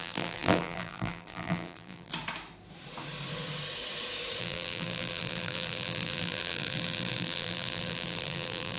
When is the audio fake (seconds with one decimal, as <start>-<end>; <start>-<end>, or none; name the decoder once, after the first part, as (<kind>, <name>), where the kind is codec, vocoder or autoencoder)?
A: 0.0-2.1 (vocoder, BigVGAN v2); 4.4-8.8